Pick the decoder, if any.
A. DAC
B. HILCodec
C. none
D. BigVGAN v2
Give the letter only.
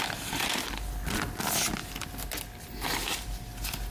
C